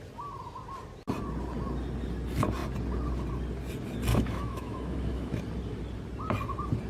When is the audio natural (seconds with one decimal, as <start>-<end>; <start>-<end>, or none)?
0.0-4.1; 5.4-6.9